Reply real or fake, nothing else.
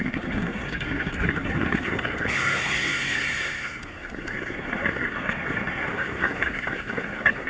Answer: fake